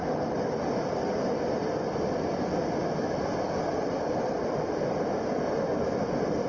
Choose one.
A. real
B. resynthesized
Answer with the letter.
A